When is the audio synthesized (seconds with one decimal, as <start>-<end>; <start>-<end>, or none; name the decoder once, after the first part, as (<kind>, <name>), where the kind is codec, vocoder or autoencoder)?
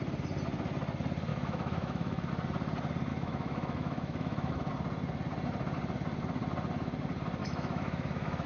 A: 1.3-2.3 (autoencoder, DAC-VAE); 3.1-4.7; 7.4-8.5